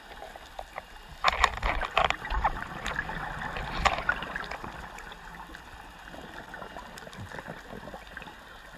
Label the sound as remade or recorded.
remade